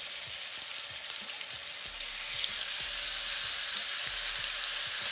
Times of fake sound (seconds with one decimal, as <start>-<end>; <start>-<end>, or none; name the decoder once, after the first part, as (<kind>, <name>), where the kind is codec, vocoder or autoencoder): none